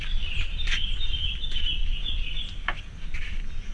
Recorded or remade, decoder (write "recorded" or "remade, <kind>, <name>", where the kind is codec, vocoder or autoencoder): recorded